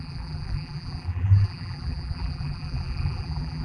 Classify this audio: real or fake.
fake